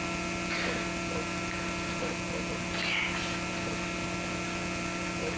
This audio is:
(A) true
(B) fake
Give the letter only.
A